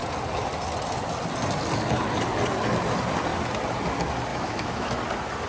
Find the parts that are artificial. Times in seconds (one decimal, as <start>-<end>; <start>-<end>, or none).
4.3-5.0